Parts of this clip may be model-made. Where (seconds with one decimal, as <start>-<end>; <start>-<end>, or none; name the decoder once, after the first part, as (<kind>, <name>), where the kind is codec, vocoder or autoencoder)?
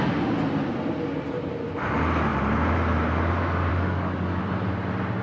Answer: 3.7-4.4 (codec, DAC)